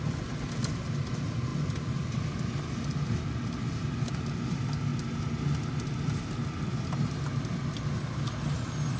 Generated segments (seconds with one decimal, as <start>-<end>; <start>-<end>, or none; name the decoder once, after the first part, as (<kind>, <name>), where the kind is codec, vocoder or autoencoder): none

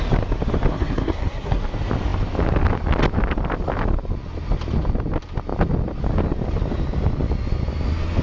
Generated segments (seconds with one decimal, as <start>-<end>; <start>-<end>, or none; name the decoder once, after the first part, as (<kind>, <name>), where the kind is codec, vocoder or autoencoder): 0.7-1.6 (codec, SNAC)

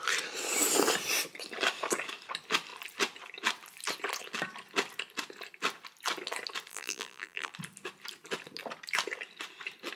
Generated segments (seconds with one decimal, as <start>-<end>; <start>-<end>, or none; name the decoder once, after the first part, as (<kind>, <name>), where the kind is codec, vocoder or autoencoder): 6.7-7.5 (vocoder, BigVGAN v2)

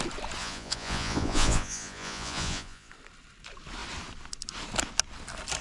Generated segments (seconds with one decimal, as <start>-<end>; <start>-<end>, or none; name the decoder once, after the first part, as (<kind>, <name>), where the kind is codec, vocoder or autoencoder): 0.4-2.9 (vocoder, Vocos)

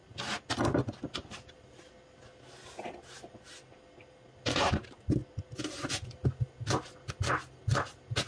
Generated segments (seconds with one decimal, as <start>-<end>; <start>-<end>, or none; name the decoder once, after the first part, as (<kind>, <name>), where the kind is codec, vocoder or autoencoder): none